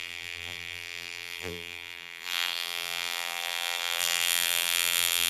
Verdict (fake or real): fake